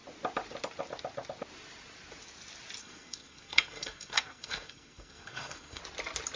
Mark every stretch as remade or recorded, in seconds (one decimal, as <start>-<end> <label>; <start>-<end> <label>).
0.0-2.8 recorded; 2.8-5.8 remade; 5.8-6.4 recorded